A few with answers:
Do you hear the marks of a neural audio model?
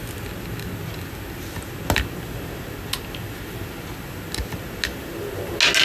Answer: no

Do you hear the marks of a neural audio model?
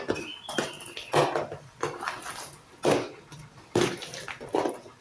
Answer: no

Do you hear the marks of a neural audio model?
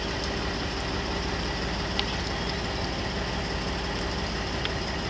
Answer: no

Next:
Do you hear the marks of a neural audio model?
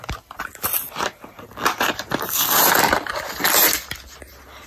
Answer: no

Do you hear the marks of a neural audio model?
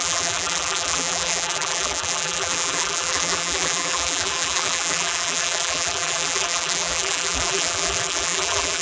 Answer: yes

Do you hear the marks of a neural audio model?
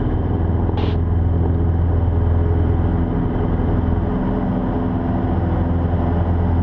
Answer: no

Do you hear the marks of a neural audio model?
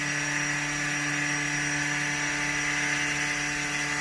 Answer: no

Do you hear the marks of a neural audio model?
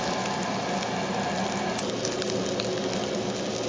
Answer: no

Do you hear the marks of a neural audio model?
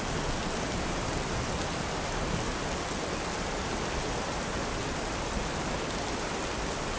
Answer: no